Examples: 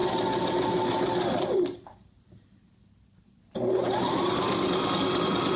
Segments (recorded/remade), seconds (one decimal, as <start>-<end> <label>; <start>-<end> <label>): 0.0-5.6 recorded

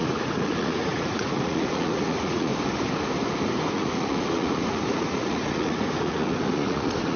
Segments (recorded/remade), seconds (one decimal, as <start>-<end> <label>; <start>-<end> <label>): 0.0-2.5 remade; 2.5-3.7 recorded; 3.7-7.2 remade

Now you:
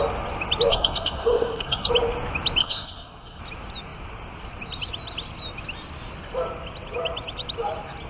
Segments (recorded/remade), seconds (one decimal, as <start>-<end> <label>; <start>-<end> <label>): 0.0-0.7 recorded; 0.7-1.9 remade; 1.9-2.6 recorded; 2.6-3.4 remade; 3.4-8.1 recorded